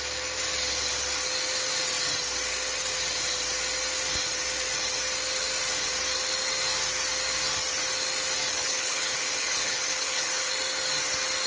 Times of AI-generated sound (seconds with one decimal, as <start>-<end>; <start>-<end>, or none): 8.6-10.5